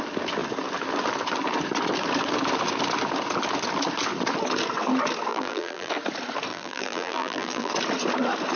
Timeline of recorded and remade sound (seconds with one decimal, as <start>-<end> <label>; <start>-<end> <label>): 0.0-5.3 recorded; 5.3-5.9 remade; 5.9-6.5 recorded; 6.5-7.7 remade; 7.7-8.6 recorded

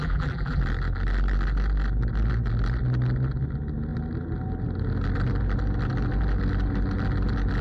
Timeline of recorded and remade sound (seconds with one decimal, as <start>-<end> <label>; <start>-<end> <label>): 0.0-0.6 remade; 0.6-7.6 recorded

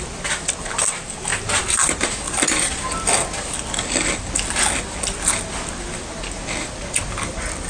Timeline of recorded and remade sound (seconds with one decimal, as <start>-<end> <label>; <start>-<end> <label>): 0.0-1.3 recorded; 1.3-2.5 remade; 2.5-7.7 recorded

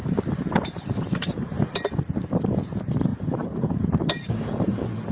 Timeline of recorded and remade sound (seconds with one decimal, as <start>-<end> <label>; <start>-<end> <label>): 0.0-1.6 remade; 1.6-3.1 recorded; 3.1-5.1 remade

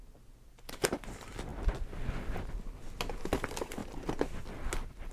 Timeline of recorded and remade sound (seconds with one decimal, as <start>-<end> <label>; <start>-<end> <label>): 0.0-5.1 recorded

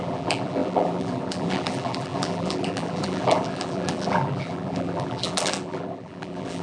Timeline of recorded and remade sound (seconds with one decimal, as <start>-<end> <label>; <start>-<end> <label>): 0.0-6.6 remade